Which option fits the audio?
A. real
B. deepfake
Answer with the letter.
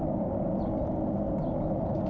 A